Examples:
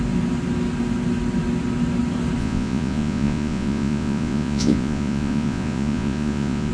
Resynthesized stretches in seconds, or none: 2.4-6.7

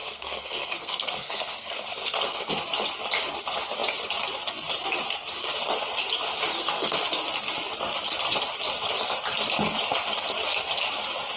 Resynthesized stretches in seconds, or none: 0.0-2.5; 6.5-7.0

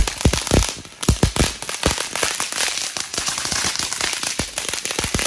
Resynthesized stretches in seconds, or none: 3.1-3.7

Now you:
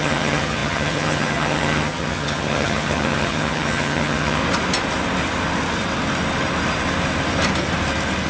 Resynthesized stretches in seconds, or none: 0.0-4.4